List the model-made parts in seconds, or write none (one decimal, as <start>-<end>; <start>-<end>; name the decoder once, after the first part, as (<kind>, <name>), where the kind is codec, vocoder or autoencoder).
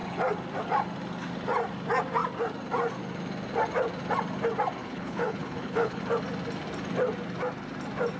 4.8-6.0 (codec, HILCodec)